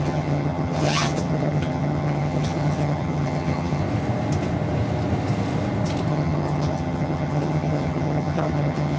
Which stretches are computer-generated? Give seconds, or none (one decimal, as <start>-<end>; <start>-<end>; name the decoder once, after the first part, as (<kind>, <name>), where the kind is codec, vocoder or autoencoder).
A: 0.0-3.8 (vocoder, HiFi-GAN); 6.1-9.0